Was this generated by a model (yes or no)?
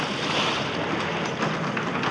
no